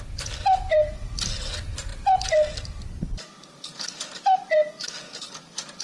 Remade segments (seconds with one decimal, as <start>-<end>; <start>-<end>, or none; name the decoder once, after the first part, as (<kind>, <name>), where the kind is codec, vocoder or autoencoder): none